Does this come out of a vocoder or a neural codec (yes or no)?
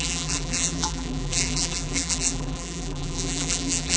yes